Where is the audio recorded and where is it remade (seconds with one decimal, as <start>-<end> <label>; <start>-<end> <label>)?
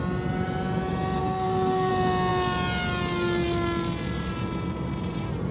0.0-1.2 recorded; 1.2-1.9 remade; 1.9-5.5 recorded